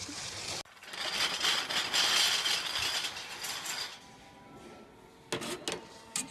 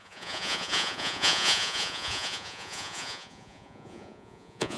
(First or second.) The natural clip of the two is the first